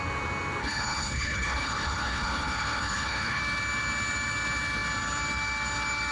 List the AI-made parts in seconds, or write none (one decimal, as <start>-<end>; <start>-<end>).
0.6-3.4